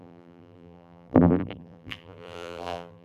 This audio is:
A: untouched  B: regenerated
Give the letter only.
B